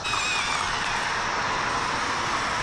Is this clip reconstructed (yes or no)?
no